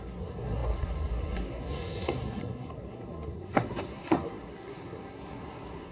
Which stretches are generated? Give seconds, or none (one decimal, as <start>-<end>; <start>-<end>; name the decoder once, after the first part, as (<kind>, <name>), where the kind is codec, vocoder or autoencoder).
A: 0.0-5.9 (codec, SNAC)